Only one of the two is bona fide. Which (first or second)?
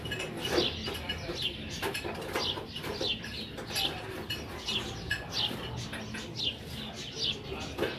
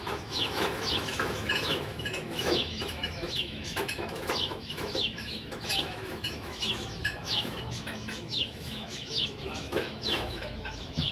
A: first